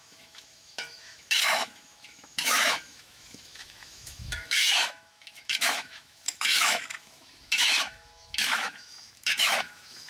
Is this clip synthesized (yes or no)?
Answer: yes